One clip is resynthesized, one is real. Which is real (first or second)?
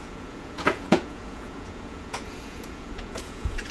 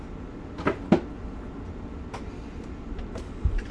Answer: second